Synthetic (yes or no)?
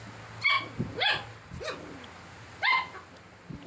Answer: no